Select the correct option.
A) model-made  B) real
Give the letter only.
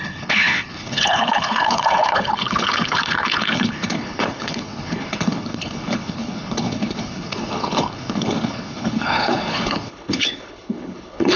A